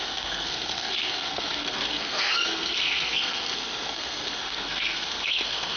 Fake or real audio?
fake